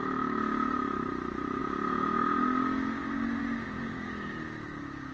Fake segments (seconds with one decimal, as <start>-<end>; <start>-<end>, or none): 0.0-5.1